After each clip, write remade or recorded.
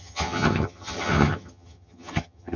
remade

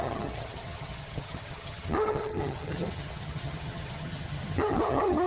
remade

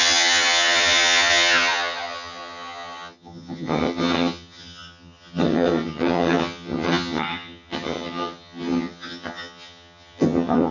remade